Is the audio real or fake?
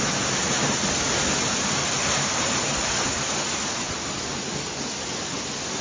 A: real